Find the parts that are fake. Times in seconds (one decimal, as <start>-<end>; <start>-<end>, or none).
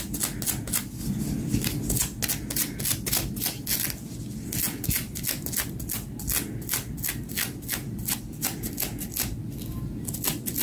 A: none